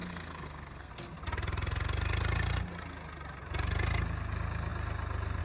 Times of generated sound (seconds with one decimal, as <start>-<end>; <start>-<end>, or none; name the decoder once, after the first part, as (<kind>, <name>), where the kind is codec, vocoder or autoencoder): 0.0-0.9 (codec, SNAC)